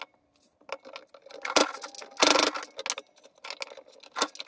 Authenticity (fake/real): real